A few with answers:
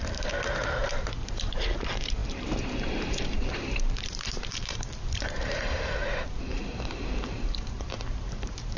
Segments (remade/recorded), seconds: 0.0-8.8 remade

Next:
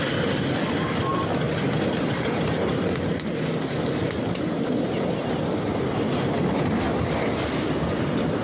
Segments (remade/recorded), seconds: 0.0-8.4 recorded

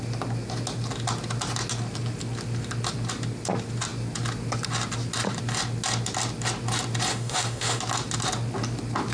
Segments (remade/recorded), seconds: 0.0-7.1 recorded; 7.1-7.8 remade; 7.8-9.1 recorded

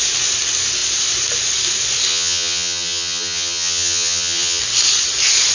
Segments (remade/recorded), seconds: 0.0-2.1 recorded; 2.1-4.6 remade; 4.6-5.5 recorded

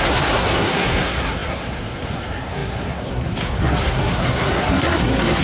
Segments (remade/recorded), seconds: 0.0-5.4 remade

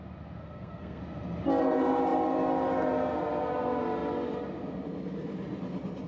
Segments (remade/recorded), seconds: 0.0-0.4 recorded; 0.4-1.0 remade; 1.0-6.1 recorded

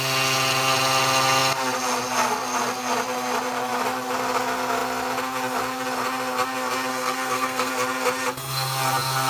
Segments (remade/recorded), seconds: 0.0-6.9 recorded; 6.9-7.7 remade; 7.7-9.3 recorded